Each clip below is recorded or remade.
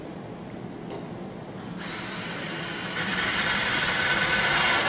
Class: remade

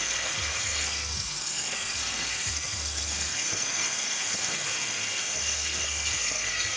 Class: remade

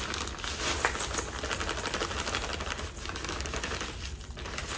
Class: recorded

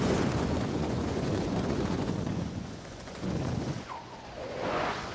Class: remade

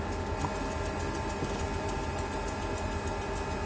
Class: recorded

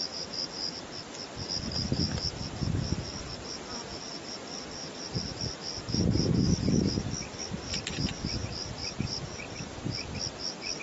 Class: recorded